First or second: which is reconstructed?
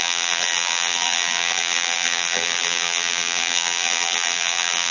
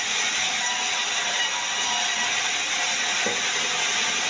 first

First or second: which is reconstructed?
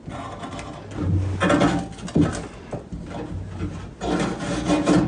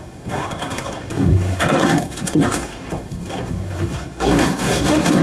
second